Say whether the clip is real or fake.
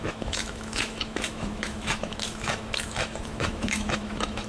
fake